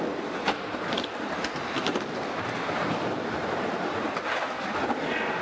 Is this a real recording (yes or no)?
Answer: yes